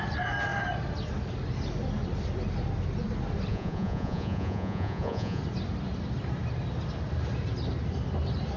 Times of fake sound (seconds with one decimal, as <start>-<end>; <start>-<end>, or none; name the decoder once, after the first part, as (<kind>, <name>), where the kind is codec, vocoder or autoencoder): 3.5-5.4 (vocoder, Vocos)